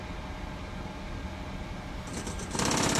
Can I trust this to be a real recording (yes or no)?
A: yes